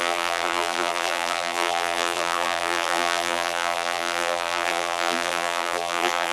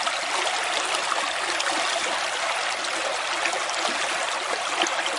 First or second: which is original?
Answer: second